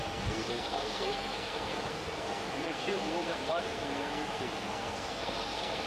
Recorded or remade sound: remade